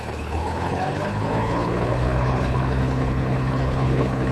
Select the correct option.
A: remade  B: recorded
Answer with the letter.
A